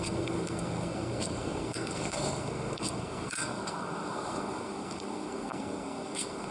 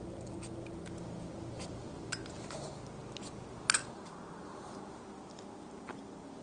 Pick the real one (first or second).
second